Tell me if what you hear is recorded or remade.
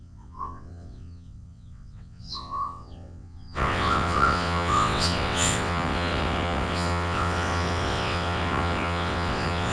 remade